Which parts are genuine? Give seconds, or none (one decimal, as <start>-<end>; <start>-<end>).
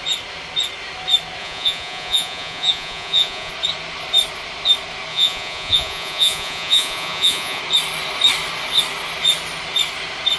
0.0-1.4; 3.5-5.1; 7.6-10.4